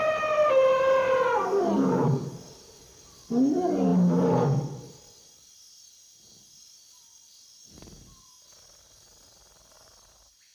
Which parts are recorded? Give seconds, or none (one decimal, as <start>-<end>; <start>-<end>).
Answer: 0.0-10.5